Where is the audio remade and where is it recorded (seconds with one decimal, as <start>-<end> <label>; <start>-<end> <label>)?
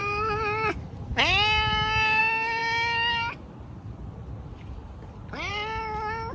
0.0-6.3 recorded